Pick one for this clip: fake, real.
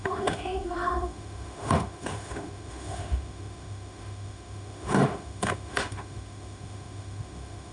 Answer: fake